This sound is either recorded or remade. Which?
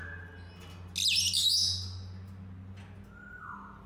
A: recorded